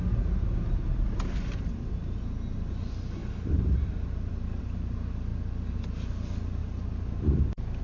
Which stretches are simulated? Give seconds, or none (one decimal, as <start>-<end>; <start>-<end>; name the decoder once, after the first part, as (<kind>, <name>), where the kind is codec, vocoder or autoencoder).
6.6-7.8 (vocoder, BigVGAN v2)